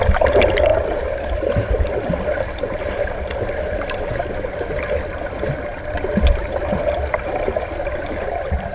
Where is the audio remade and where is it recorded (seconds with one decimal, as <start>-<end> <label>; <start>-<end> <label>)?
0.0-0.7 remade; 0.7-5.5 recorded; 5.5-8.7 remade